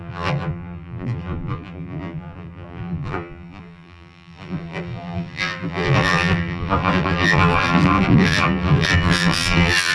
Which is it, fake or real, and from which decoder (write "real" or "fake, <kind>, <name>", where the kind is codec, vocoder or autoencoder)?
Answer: fake, vocoder, BigVGAN v2